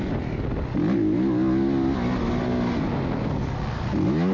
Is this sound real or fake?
real